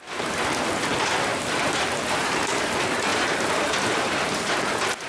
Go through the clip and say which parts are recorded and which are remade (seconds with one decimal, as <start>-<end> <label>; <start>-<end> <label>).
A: 0.0-1.3 recorded; 1.3-2.5 remade; 2.5-3.1 recorded; 3.1-4.5 remade; 4.5-5.1 recorded